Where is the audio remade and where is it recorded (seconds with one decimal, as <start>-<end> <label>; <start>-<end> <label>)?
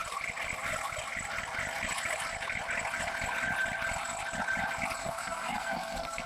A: 0.0-5.0 recorded; 5.0-6.3 remade